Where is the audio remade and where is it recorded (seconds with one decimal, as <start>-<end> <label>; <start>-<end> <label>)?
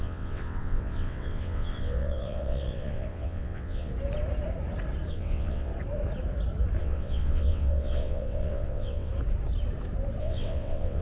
0.0-3.9 remade; 3.9-5.1 recorded; 5.1-5.7 remade; 5.7-6.8 recorded; 6.8-9.1 remade; 9.1-10.2 recorded; 10.2-11.0 remade